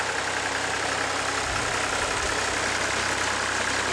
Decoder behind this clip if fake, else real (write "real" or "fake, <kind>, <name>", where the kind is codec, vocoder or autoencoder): real